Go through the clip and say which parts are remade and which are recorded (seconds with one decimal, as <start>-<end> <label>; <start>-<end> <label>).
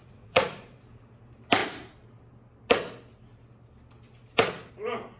0.0-0.8 remade; 0.8-5.2 recorded